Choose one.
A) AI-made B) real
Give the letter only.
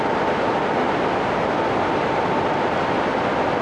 B